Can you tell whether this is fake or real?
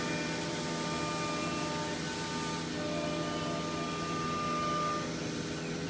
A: real